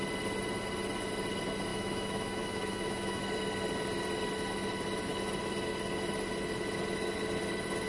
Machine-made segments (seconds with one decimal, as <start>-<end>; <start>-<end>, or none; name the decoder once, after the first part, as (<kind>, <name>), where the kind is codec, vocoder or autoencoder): 1.7-3.2 (autoencoder, DAC-VAE)